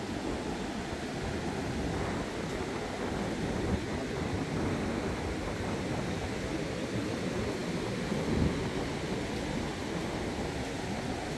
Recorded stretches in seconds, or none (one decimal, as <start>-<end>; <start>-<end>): 0.0-11.4